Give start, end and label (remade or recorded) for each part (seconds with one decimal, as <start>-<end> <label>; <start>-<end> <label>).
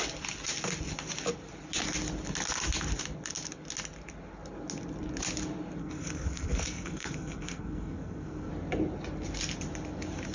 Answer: 0.0-5.8 recorded; 5.8-8.5 remade; 8.5-10.3 recorded